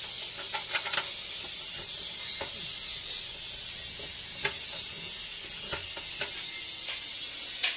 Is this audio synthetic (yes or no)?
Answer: no